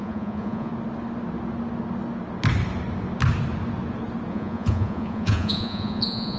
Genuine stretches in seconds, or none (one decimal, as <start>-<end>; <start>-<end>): 0.7-4.3